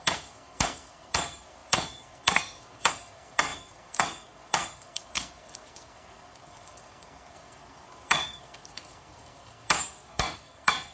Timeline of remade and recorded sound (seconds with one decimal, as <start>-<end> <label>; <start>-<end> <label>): 0.0-10.9 remade